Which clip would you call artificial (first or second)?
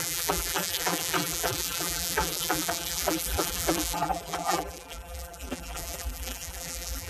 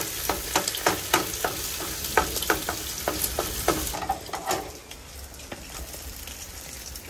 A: first